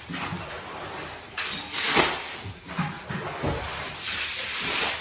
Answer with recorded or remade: recorded